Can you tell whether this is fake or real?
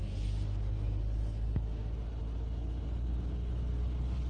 real